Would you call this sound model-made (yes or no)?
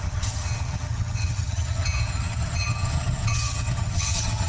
yes